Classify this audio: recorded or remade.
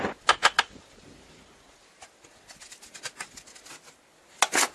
recorded